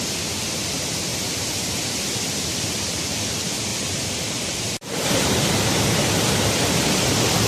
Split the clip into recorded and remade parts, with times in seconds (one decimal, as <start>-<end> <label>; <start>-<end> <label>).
0.0-1.1 recorded; 1.1-3.0 remade; 3.0-3.7 recorded; 3.7-7.0 remade; 7.0-7.5 recorded